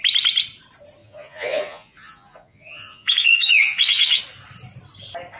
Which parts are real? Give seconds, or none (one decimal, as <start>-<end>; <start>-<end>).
0.0-1.0; 4.2-5.4